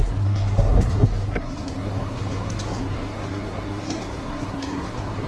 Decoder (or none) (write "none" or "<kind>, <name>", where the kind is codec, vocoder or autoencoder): codec, SNAC